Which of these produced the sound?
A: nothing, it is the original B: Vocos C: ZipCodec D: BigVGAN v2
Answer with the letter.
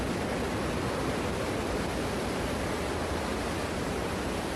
A